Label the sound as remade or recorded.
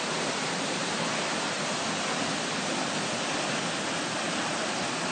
recorded